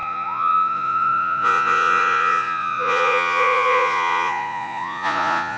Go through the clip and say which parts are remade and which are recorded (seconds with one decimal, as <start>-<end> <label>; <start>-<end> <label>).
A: 0.0-5.6 remade

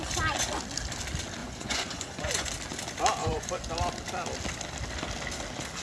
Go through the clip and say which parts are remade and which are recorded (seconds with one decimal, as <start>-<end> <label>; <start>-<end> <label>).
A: 0.0-1.4 recorded; 1.4-2.5 remade; 2.5-3.2 recorded; 3.2-3.7 remade; 3.7-5.8 recorded

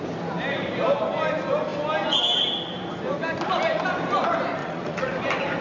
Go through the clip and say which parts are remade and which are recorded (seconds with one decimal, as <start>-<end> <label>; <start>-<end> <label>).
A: 0.0-4.6 recorded; 4.6-5.1 remade; 5.1-5.6 recorded

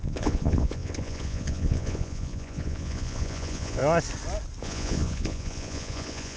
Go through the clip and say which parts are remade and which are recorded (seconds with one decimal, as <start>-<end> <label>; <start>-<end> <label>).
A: 0.0-3.8 remade; 3.8-4.6 recorded; 4.6-6.4 remade